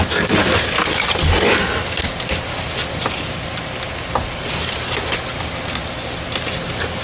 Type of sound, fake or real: real